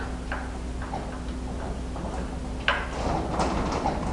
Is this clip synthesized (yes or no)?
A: no